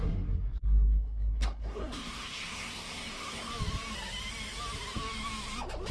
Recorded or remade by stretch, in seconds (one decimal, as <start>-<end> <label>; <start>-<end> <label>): 0.0-3.5 remade; 3.5-5.9 recorded